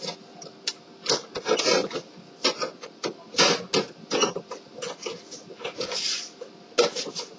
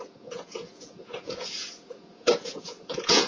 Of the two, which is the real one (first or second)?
first